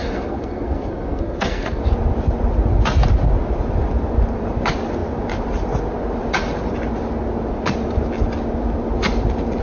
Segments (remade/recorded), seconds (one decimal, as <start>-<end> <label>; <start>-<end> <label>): 0.0-1.8 remade; 1.8-9.6 recorded